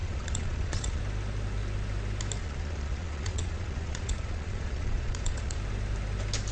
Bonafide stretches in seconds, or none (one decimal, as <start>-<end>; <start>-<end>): 1.0-2.4; 5.6-6.5